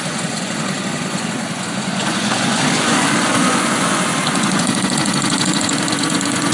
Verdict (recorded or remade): remade